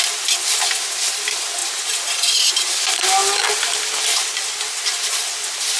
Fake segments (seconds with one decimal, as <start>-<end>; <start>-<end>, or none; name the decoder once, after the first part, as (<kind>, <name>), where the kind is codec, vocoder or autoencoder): none